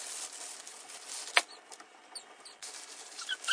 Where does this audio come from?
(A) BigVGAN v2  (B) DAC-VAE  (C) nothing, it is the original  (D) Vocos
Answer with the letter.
C